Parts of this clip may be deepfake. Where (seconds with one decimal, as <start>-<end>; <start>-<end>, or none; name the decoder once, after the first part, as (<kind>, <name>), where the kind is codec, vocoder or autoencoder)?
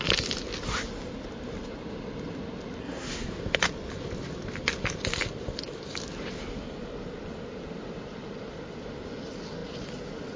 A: 2.8-3.3 (codec, SNAC)